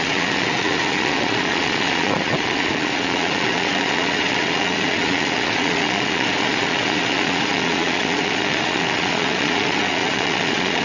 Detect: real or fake fake